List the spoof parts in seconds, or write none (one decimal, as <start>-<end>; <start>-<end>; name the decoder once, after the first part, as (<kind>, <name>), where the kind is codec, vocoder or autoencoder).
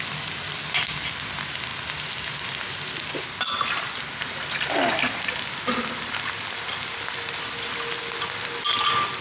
none